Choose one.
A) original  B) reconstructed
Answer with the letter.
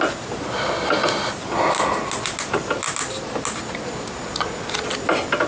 A